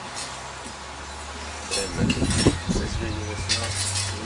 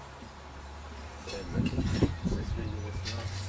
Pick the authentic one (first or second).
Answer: first